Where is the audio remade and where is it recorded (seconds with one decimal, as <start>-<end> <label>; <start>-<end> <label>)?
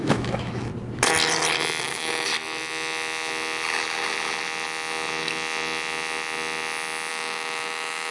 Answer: 0.0-0.7 remade; 0.7-1.8 recorded; 1.8-2.3 remade; 2.3-7.1 recorded; 7.1-8.1 remade